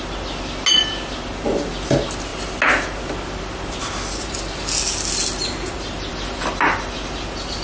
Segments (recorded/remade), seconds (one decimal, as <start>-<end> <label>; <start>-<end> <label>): 0.0-7.6 recorded